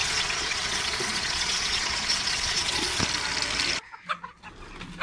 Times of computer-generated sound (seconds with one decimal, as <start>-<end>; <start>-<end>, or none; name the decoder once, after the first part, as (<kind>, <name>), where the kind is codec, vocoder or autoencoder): 0.0-3.0 (vocoder, Vocos)